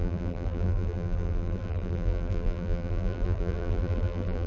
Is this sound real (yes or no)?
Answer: no